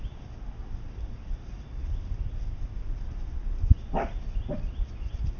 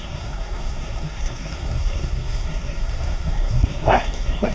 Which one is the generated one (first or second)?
second